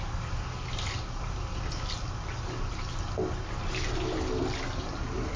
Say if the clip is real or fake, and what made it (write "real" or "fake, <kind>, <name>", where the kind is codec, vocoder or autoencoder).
real